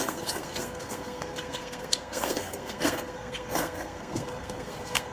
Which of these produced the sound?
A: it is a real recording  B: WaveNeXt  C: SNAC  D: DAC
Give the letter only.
C